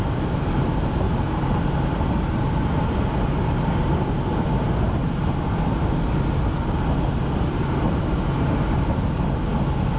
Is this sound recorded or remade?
recorded